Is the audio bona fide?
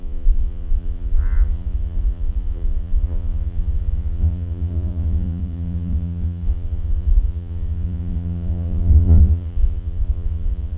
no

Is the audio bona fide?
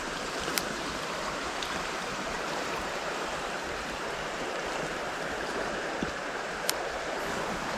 no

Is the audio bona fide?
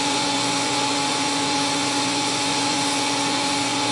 no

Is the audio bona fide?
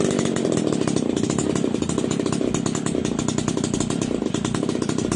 yes